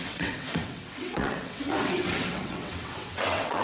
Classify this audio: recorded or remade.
remade